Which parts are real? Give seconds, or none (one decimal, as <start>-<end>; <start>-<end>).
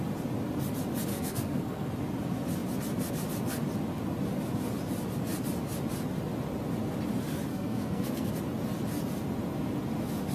0.0-1.1; 1.9-7.5; 8.3-10.3